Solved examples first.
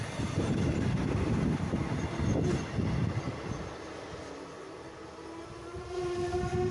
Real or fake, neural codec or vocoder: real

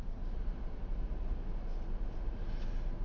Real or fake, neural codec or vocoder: real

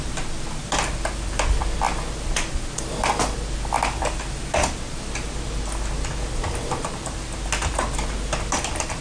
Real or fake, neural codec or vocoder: real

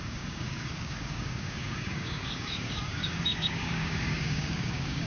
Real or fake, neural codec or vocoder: fake, codec, DAC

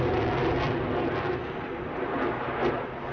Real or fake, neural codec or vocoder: real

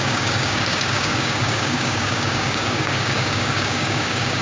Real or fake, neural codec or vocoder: fake, codec, DAC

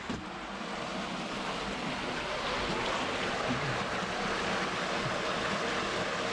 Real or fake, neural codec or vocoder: real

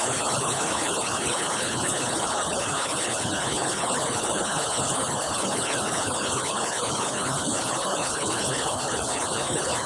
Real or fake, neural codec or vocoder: fake, codec, HILCodec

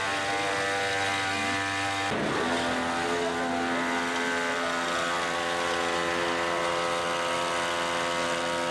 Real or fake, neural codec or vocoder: real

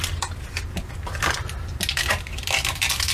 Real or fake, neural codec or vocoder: real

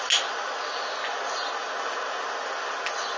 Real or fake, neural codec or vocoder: real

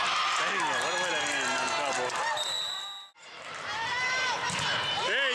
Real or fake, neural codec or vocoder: real